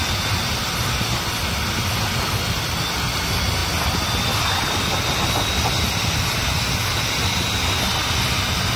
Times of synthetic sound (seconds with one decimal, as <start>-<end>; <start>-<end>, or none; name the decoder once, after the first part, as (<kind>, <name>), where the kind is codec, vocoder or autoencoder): none